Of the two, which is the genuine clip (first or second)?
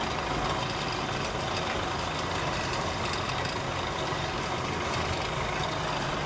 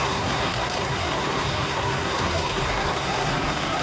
first